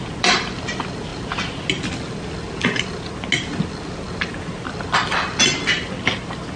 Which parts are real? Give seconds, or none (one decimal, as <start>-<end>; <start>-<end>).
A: 0.0-6.6